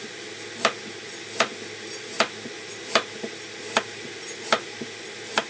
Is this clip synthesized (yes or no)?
no